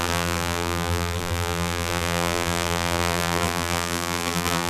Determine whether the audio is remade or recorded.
remade